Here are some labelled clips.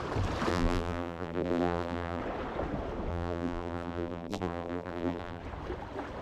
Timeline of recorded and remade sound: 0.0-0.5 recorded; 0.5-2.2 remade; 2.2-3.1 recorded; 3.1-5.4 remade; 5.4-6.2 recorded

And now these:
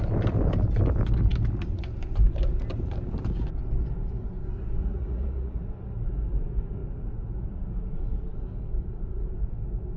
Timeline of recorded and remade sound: 0.0-4.8 recorded; 4.8-5.6 remade; 5.6-10.0 recorded

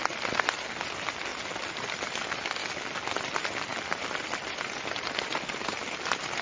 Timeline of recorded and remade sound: 0.0-3.7 recorded; 3.7-5.2 remade; 5.2-6.4 recorded

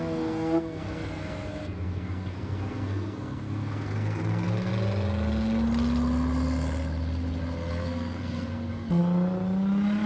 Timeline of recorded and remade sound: 0.0-4.7 remade; 4.7-7.7 recorded; 7.7-9.0 remade; 9.0-10.1 recorded

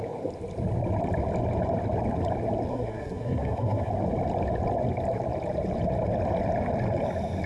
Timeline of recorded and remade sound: 0.0-2.7 recorded; 2.7-3.9 remade; 3.9-7.5 recorded

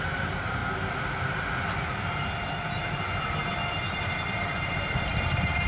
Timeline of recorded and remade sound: 0.0-0.6 remade; 0.6-4.0 recorded; 4.0-5.7 remade

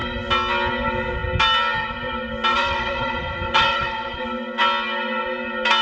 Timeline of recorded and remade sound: 0.0-2.5 recorded; 2.5-4.2 remade; 4.2-5.8 recorded

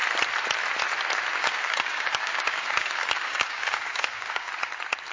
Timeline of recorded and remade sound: 0.0-1.4 recorded; 1.4-4.5 remade; 4.5-5.1 recorded